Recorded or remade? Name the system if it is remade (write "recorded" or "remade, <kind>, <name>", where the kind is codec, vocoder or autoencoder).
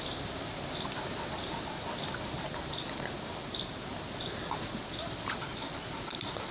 recorded